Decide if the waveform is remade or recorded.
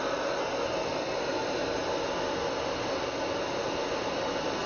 recorded